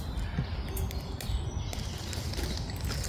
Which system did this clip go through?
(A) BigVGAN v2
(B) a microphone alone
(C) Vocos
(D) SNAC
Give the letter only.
B